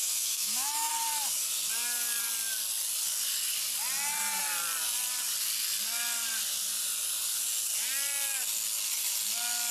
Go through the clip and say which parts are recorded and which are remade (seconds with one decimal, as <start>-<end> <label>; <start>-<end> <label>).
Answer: 0.0-0.9 remade; 0.9-9.7 recorded